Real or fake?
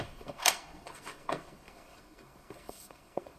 fake